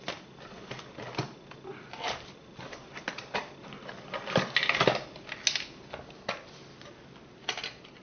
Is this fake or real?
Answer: real